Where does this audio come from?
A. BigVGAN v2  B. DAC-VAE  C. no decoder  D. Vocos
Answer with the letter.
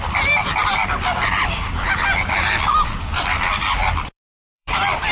A